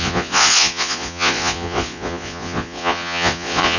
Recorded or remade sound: remade